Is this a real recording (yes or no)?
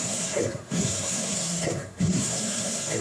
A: no